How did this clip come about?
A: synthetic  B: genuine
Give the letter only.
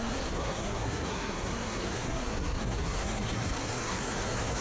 A